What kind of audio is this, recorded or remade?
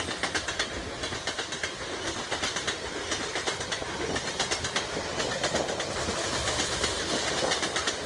recorded